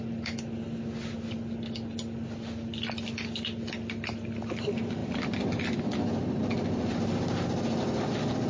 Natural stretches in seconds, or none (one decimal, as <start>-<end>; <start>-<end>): 0.0-8.5